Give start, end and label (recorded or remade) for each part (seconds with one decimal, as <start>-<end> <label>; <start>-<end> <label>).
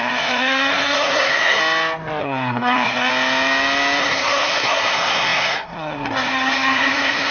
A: 0.0-1.6 remade; 1.6-2.2 recorded; 2.2-3.1 remade; 3.1-4.0 recorded; 4.0-7.3 remade